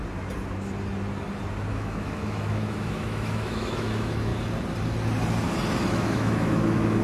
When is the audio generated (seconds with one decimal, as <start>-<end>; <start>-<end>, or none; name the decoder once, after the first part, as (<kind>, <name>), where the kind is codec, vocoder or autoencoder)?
1.7-4.3 (autoencoder, DAC-VAE); 5.9-7.0